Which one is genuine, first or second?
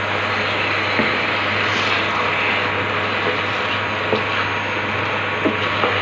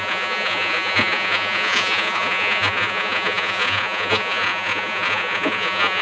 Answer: first